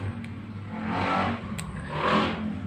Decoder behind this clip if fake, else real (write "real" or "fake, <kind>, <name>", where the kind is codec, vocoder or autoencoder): real